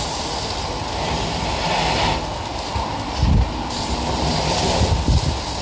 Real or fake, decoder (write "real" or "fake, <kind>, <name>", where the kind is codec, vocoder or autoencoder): real